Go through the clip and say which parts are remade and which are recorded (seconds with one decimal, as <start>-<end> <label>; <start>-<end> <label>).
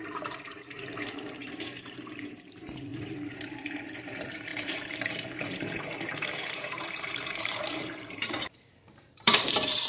0.0-9.9 remade